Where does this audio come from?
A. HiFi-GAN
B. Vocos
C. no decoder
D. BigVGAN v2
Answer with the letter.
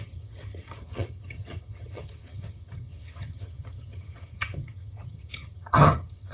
A